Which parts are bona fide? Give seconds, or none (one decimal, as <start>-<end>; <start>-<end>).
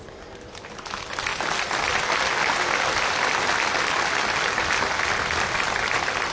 0.0-6.3